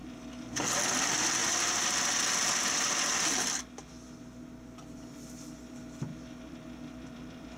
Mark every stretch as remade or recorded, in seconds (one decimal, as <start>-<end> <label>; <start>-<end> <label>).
0.0-0.7 remade; 0.7-1.4 recorded; 1.4-3.6 remade; 3.6-6.1 recorded; 6.1-7.6 remade